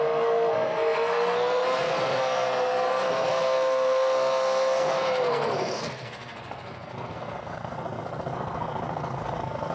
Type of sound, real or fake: fake